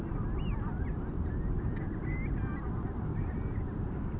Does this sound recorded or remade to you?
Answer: recorded